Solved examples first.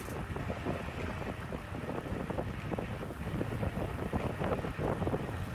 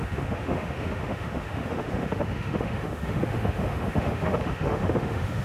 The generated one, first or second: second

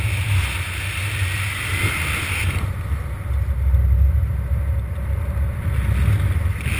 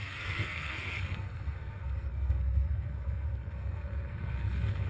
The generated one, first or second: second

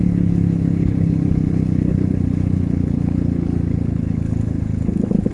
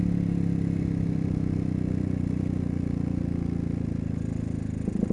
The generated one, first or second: first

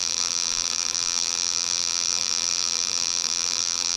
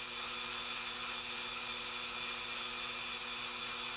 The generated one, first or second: first